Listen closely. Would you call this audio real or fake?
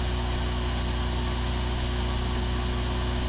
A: real